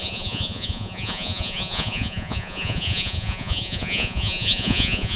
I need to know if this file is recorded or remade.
remade